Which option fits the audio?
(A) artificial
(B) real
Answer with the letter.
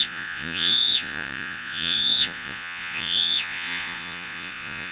A